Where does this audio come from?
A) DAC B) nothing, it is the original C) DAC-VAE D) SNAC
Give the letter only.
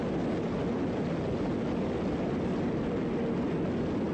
B